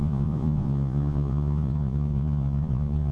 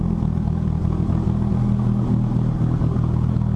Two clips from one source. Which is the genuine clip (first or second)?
second